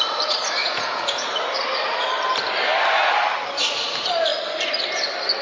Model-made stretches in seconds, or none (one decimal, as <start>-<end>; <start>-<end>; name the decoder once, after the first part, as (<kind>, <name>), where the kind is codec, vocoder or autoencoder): 0.6-1.3 (vocoder, Vocos)